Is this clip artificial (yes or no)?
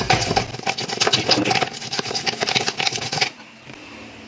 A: no